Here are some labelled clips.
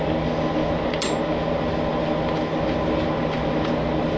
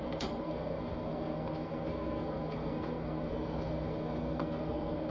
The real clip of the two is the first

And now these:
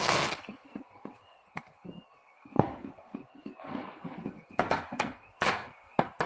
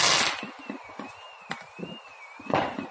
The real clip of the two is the second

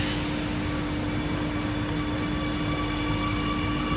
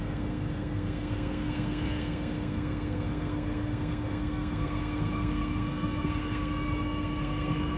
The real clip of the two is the first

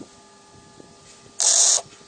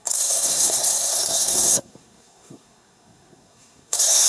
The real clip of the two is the first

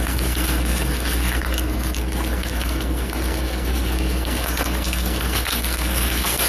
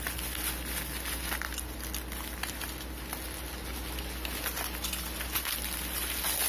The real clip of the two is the second